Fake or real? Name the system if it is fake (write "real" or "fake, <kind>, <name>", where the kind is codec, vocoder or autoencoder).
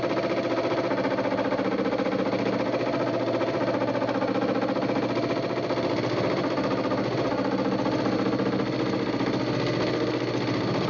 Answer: real